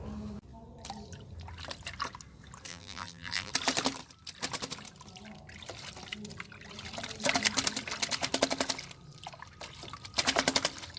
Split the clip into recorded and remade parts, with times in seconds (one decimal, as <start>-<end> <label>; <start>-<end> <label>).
0.0-2.7 recorded; 2.7-3.5 remade; 3.5-11.0 recorded